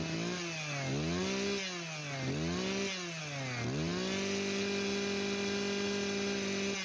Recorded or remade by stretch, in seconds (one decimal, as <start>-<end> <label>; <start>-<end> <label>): 0.0-6.8 recorded